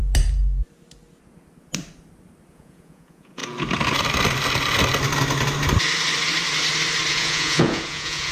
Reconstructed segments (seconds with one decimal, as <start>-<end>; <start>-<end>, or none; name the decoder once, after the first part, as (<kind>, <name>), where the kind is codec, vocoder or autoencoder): 2.5-3.4 (vocoder, Vocos); 7.1-8.3